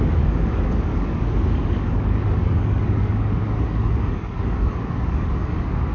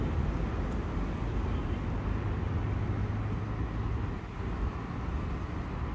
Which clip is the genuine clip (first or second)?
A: second